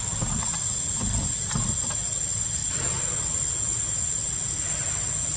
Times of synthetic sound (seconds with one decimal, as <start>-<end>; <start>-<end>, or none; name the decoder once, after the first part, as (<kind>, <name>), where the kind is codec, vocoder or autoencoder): none